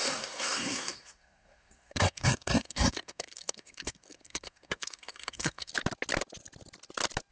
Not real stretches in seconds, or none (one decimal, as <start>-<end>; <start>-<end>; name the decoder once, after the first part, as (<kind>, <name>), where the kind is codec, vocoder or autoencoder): 0.0-5.7 (codec, SNAC)